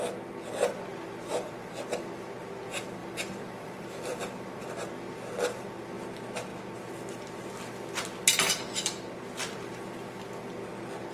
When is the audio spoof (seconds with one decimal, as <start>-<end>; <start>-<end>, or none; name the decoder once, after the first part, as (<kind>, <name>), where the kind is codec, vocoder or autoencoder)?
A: 0.9-1.7 (vocoder, BigVGAN v2); 3.0-4.7